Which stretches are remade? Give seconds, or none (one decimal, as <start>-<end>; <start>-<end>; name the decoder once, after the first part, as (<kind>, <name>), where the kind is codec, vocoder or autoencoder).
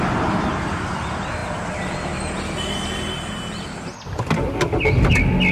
none